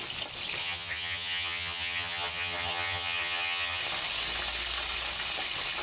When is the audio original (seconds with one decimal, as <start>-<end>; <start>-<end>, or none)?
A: 0.0-0.6; 3.8-5.8